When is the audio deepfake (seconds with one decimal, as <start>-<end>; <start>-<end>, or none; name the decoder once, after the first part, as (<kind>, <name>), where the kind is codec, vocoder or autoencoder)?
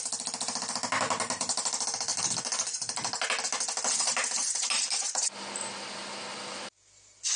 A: none